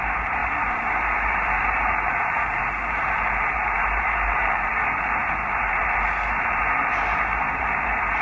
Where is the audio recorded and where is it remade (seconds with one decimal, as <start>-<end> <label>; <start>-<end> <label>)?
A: 0.0-4.7 remade; 4.7-5.2 recorded; 5.2-8.2 remade